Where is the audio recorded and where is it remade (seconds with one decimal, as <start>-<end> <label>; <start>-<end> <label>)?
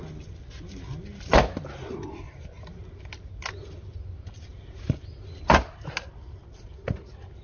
0.0-7.4 recorded